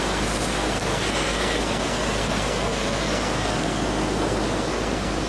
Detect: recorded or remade remade